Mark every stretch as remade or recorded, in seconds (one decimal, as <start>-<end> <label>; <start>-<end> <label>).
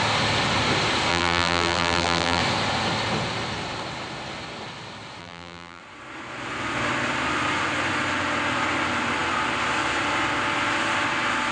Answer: 0.0-1.1 recorded; 1.1-2.4 remade; 2.4-5.2 recorded; 5.2-5.8 remade; 5.8-11.5 recorded